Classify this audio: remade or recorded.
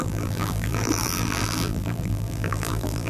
remade